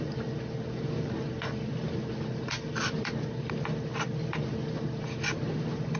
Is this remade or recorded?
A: recorded